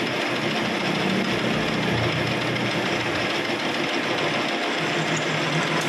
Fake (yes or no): no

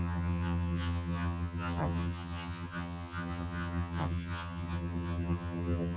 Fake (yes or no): yes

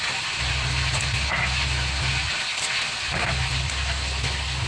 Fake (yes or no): no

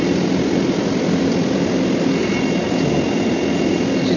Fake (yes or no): no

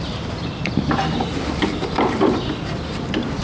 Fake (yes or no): yes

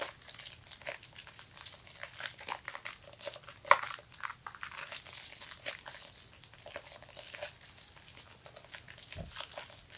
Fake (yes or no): no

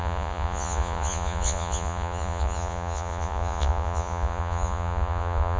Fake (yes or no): yes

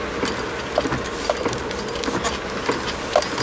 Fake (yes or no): no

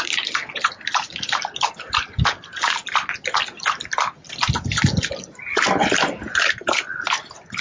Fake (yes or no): no